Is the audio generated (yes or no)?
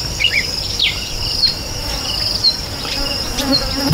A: yes